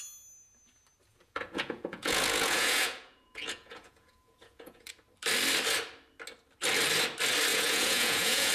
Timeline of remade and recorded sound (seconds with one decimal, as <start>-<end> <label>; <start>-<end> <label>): 0.0-1.1 recorded; 1.1-4.9 remade; 4.9-7.5 recorded; 7.5-8.5 remade